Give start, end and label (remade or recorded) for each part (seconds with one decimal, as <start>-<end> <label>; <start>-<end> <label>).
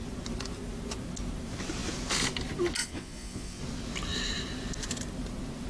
0.0-2.8 recorded; 2.8-3.6 remade; 3.6-5.7 recorded